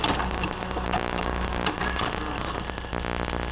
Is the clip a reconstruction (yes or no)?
no